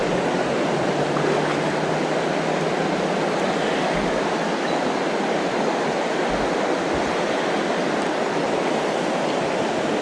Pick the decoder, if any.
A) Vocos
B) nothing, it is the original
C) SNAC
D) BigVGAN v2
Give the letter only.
B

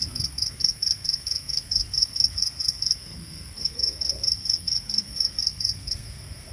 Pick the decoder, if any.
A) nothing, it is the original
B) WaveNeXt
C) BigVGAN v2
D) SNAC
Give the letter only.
D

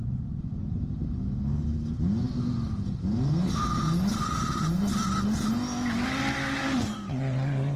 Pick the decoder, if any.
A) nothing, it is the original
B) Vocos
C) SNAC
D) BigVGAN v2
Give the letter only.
A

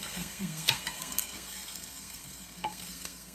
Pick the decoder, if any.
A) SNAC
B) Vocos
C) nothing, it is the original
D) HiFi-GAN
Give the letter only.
A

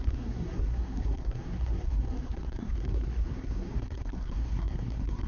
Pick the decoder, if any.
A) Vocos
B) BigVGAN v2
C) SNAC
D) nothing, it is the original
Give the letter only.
C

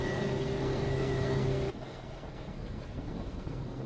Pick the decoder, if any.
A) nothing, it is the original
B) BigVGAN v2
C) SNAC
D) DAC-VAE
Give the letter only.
C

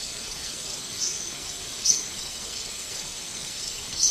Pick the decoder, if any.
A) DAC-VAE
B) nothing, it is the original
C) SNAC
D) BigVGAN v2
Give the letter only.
C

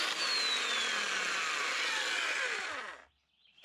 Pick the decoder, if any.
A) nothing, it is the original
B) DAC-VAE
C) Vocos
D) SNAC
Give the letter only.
A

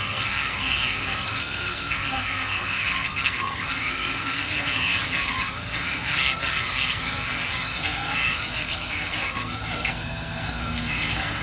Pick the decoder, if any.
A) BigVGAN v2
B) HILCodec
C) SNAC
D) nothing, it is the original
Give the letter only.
C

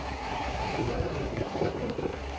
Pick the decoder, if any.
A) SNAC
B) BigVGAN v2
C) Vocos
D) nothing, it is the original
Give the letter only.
A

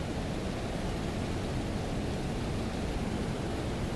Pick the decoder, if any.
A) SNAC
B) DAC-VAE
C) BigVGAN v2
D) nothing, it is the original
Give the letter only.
D